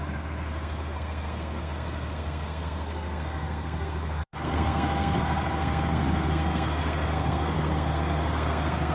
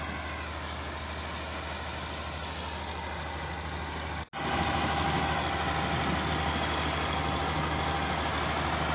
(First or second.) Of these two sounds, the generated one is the first